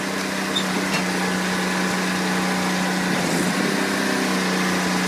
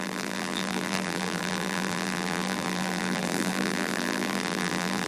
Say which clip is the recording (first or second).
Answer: first